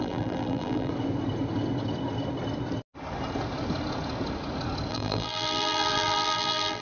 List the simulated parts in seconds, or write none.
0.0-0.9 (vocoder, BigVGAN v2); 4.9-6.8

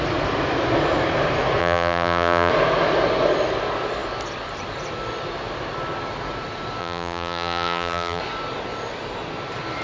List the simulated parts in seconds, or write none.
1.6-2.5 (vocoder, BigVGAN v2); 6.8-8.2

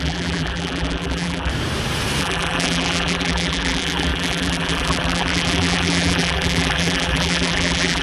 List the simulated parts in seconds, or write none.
0.0-1.5 (vocoder, BigVGAN v2); 2.2-8.0

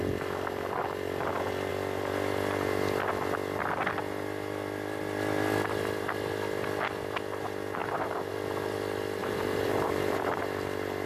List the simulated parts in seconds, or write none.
7.8-8.3 (vocoder, BigVGAN v2); 9.2-10.4

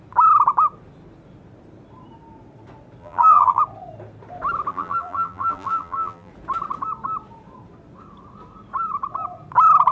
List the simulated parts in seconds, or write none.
3.0-3.6 (vocoder, BigVGAN v2); 4.7-6.3